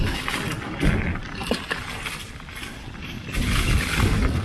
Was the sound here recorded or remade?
recorded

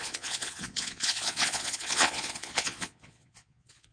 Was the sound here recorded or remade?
remade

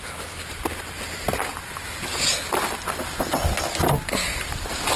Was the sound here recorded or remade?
recorded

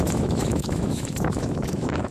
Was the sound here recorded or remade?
remade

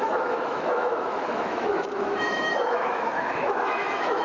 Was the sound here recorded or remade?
remade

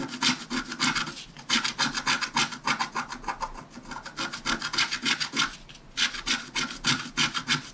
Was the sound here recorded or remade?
recorded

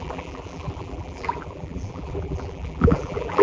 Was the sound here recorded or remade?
remade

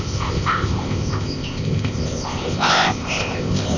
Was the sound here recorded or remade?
remade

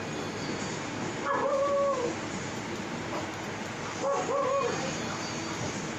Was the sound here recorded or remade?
recorded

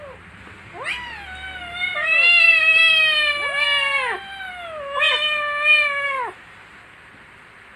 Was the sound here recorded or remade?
recorded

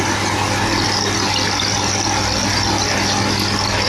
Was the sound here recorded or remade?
recorded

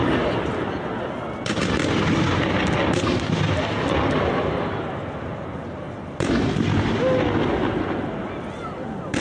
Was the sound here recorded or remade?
recorded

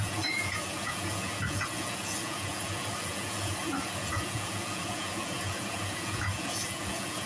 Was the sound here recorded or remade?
remade